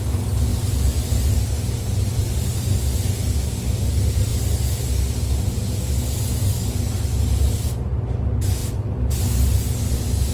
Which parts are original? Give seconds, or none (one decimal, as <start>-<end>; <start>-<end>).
0.0-0.5; 1.3-8.6; 9.2-10.3